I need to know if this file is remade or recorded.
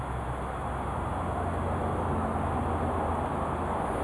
recorded